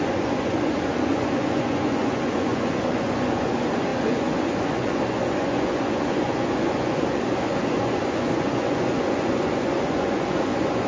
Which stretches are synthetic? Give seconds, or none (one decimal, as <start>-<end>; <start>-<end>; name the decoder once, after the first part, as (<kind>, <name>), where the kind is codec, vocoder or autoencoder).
0.0-10.9 (vocoder, Vocos)